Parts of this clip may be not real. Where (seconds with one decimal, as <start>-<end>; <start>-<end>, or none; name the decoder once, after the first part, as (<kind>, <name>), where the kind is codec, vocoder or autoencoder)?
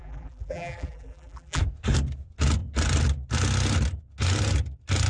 0.0-1.6 (vocoder, BigVGAN v2)